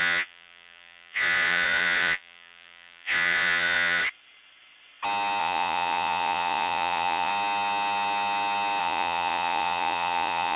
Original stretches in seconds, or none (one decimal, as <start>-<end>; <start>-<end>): 4.0-5.4; 7.3-8.8